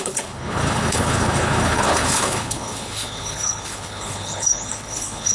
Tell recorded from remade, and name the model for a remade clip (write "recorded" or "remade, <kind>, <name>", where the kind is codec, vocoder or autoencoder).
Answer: remade, codec, HILCodec